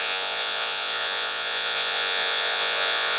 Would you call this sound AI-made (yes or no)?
yes